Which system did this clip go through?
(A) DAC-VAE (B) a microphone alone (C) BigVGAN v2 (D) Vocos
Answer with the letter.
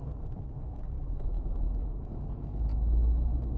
A